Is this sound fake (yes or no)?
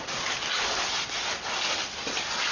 no